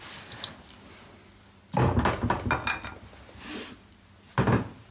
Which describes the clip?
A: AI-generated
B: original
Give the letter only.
B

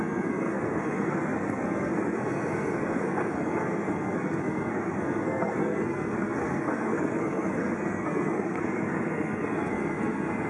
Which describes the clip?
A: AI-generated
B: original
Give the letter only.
A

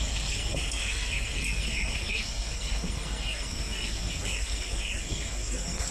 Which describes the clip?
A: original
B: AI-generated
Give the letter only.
B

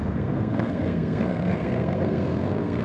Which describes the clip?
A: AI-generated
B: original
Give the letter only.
A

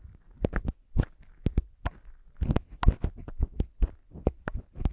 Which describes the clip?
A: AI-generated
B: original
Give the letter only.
B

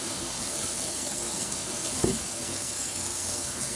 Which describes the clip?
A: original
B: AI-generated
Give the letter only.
B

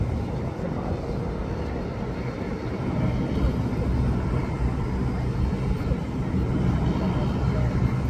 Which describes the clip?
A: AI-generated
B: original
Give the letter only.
B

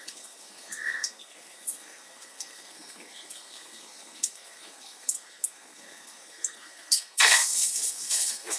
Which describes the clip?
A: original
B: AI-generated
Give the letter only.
B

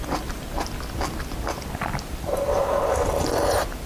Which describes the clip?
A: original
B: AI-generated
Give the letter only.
A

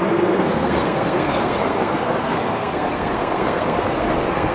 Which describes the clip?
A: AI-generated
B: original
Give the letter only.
A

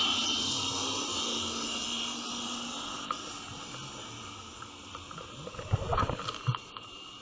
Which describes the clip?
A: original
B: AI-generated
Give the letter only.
A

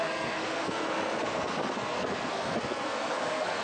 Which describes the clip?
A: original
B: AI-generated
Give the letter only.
B